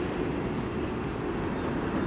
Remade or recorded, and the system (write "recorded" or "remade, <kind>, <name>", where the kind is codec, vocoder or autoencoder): recorded